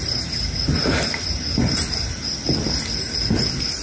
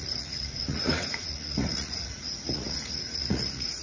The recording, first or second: first